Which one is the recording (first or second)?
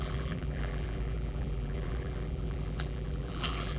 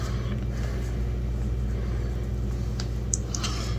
second